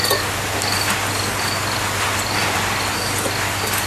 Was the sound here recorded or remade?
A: recorded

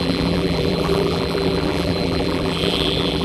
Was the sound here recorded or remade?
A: remade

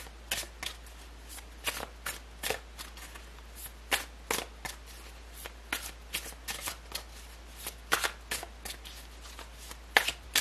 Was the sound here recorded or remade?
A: recorded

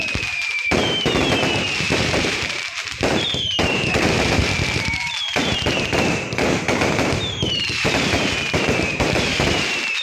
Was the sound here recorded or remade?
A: remade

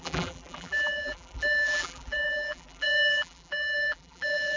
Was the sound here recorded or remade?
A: remade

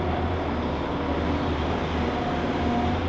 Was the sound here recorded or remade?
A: recorded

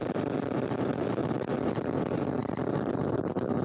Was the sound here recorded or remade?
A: remade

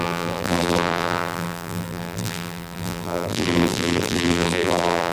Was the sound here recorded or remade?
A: remade